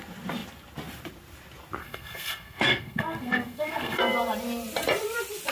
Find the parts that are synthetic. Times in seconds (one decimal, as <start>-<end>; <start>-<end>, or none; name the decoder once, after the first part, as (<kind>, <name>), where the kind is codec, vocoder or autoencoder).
1.8-4.0 (codec, SNAC)